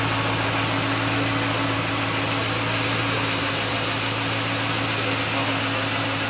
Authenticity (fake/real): real